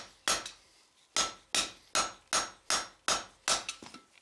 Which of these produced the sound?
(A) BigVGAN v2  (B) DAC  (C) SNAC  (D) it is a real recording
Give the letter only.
D